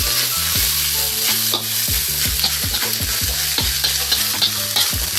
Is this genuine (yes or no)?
yes